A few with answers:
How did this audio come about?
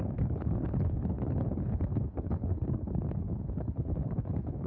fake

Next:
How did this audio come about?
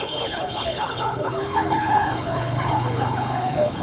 fake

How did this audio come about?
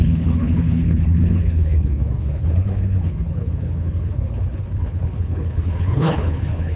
fake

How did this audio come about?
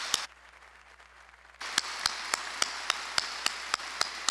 real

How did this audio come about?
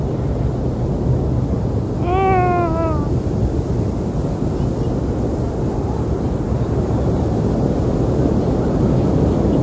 real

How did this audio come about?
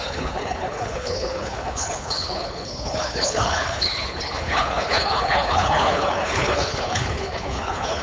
fake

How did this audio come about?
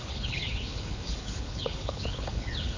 fake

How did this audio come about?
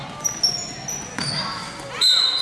real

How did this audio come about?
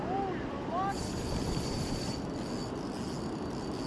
real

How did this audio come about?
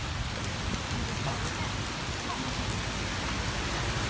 real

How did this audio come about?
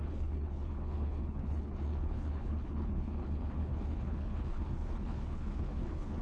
fake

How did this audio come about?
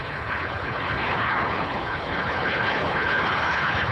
fake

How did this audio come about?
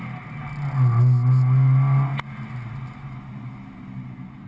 real